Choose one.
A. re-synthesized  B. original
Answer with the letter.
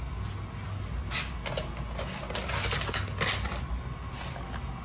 B